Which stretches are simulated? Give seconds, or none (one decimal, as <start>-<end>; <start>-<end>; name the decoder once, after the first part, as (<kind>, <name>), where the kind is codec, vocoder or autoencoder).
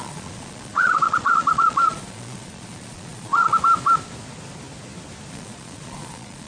0.0-3.5 (vocoder, Vocos); 5.3-6.5